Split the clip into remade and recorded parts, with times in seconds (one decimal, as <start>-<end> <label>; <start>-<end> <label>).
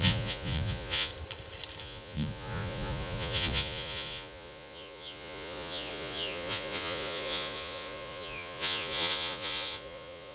0.0-1.1 remade; 1.1-1.8 recorded; 1.8-10.3 remade